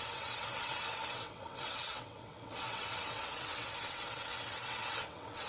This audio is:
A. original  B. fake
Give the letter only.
B